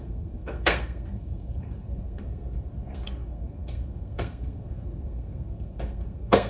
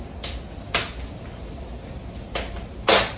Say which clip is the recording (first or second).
second